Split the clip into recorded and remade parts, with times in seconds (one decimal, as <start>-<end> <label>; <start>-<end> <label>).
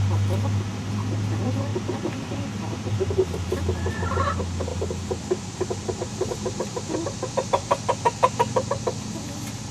0.0-9.7 recorded